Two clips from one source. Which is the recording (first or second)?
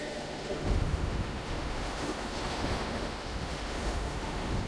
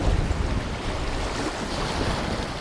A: second